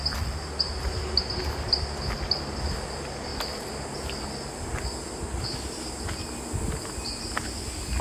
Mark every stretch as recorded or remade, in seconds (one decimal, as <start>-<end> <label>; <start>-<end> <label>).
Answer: 0.0-8.0 recorded